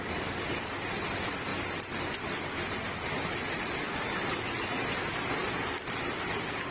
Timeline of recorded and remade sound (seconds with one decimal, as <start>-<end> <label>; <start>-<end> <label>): 0.0-6.7 recorded